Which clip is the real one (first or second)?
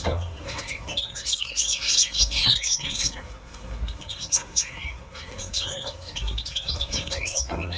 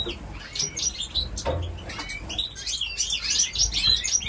second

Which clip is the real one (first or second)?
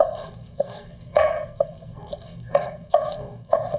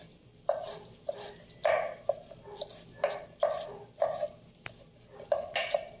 second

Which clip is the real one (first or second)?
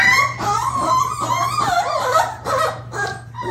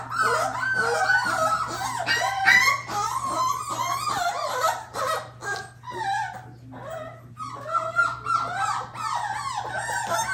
second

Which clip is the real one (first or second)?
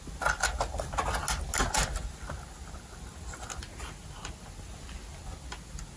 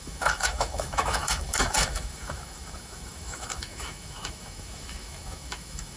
first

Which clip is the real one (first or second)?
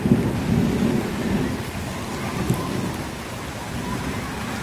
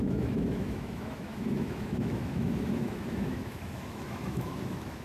first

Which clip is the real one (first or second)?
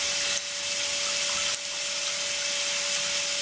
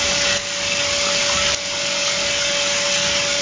first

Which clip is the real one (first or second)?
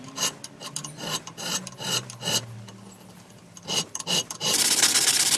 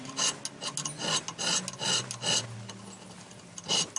second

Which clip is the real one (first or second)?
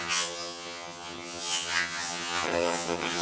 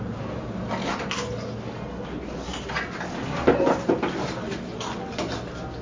second